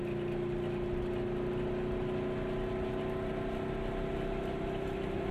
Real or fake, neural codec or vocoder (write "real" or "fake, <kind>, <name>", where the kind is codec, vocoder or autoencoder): real